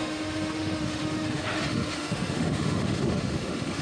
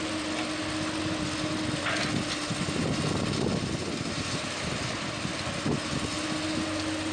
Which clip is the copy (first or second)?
first